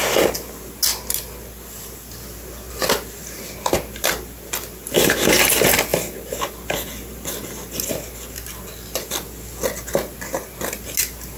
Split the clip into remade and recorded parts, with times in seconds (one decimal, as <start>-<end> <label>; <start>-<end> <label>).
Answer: 0.0-11.4 recorded